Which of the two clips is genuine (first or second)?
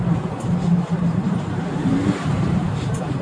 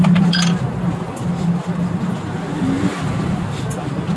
second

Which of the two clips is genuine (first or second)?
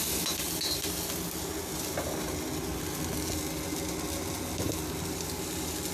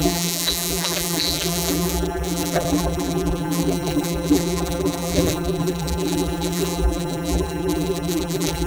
first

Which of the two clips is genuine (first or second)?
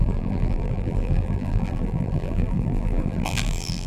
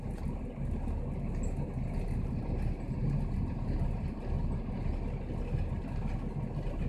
second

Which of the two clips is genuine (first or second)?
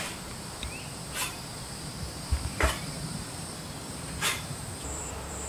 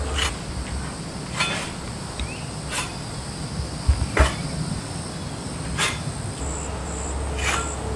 second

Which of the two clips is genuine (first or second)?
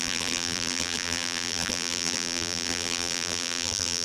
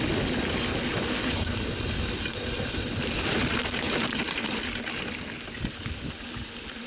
second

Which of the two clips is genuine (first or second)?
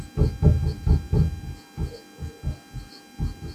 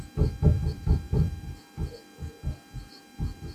first